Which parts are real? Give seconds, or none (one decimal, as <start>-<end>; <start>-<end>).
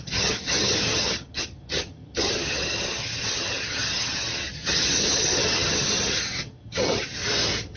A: 7.2-7.8